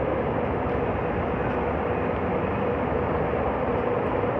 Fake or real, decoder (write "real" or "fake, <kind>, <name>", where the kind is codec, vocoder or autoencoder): real